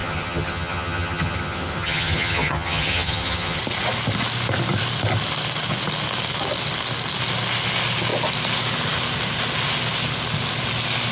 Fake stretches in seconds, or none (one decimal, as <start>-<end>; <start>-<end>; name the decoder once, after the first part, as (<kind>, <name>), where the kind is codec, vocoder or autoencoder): 0.0-3.6 (vocoder, HiFi-GAN)